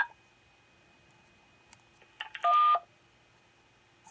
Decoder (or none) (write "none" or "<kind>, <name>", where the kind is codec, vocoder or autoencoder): none